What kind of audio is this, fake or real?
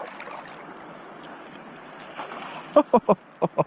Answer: real